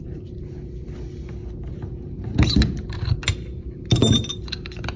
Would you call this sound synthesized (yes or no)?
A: no